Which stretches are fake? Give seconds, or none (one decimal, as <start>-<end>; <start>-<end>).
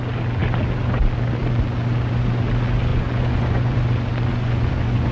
2.9-3.8; 4.3-5.1